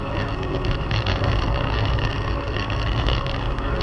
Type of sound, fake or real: fake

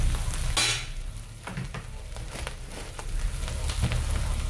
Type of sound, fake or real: real